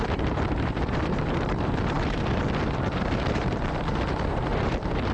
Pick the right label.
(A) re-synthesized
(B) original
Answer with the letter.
A